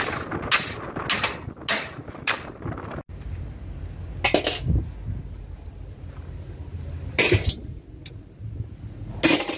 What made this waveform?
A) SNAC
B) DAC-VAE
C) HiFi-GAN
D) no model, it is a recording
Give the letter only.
D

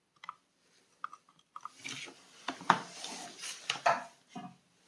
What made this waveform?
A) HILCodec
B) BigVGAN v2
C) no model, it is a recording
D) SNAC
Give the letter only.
C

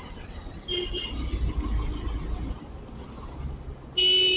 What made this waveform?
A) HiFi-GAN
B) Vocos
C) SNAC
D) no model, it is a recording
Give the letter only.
D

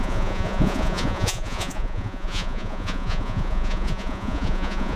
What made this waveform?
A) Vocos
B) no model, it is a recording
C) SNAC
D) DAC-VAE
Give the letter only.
A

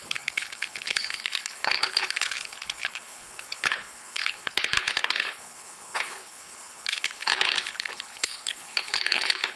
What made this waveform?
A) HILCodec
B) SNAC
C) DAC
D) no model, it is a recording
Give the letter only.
A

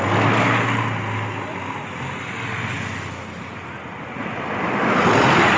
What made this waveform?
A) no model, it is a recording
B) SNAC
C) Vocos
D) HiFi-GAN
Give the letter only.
A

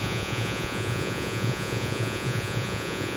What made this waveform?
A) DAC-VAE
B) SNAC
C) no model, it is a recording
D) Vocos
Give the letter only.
D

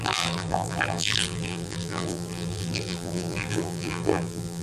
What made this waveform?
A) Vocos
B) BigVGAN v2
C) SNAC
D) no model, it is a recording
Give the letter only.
B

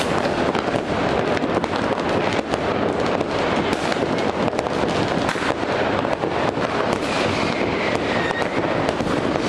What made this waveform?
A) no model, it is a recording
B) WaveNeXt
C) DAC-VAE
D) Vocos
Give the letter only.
A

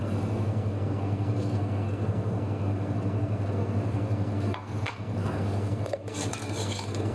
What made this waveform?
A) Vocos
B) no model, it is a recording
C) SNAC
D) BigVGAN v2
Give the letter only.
C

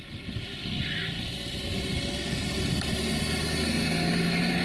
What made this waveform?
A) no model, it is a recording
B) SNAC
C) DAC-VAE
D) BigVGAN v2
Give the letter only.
A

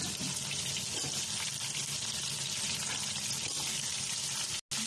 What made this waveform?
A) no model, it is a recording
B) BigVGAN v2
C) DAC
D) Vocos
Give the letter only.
A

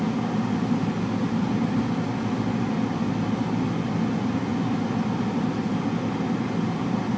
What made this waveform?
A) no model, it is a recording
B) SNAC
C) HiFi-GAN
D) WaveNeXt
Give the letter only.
A